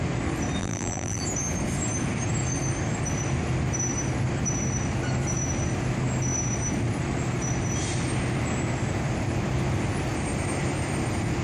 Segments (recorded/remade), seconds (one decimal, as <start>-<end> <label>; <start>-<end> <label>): 0.0-0.6 recorded; 0.6-1.2 remade; 1.2-11.4 recorded